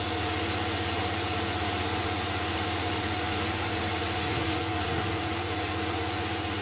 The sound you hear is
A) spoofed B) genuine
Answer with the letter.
A